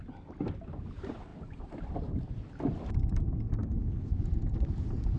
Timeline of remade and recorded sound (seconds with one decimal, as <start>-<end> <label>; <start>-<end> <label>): 0.0-3.6 recorded; 3.6-4.2 remade; 4.2-5.2 recorded